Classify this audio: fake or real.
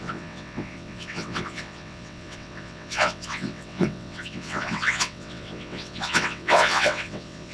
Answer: fake